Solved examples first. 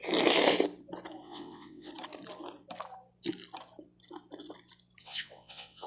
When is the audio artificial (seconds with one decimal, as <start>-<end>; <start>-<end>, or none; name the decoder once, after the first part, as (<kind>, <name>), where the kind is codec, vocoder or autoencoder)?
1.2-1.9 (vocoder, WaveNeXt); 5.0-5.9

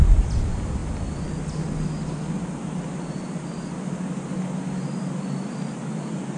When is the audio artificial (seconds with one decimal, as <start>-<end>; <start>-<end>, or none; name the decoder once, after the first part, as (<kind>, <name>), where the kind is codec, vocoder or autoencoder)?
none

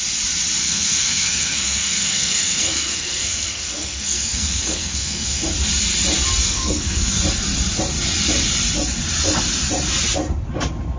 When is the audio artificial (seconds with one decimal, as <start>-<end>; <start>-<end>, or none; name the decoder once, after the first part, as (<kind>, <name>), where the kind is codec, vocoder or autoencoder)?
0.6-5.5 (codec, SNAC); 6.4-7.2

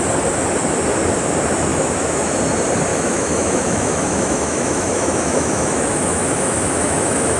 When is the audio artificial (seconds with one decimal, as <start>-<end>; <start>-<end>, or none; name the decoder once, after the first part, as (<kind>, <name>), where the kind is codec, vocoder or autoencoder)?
1.7-2.3 (autoencoder, DAC-VAE); 2.9-7.4

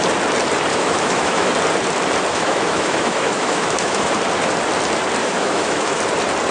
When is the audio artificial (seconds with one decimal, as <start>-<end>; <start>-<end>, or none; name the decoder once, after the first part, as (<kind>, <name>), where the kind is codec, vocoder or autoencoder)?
0.7-1.5 (autoencoder, DAC-VAE); 2.3-4.1; 5.2-6.0

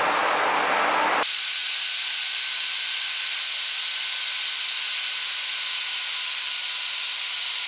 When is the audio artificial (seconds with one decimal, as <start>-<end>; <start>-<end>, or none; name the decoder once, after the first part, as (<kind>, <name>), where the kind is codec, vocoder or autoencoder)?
none

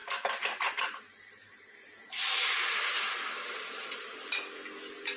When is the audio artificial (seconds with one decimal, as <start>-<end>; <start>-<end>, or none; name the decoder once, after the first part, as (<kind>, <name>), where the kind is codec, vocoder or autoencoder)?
none

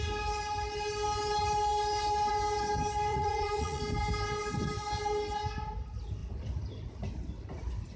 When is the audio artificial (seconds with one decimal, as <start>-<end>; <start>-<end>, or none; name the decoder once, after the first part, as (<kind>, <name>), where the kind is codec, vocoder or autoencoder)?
3.1-3.8 (vocoder, Vocos)